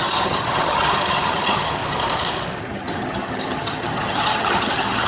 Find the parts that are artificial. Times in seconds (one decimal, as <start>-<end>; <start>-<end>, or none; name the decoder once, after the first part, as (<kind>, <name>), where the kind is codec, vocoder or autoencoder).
0.0-1.8 (vocoder, HiFi-GAN); 2.6-5.1